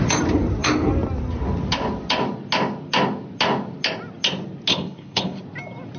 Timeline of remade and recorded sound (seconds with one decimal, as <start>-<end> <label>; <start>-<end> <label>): 0.0-4.7 recorded; 4.7-5.4 remade; 5.4-6.0 recorded